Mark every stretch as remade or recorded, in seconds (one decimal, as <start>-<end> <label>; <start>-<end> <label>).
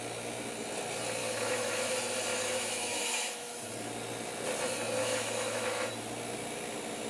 0.0-1.2 recorded; 1.2-1.9 remade; 1.9-2.3 recorded; 2.3-3.7 remade; 3.7-5.0 recorded; 5.0-5.9 remade; 5.9-7.1 recorded